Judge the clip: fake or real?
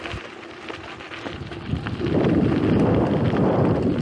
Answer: real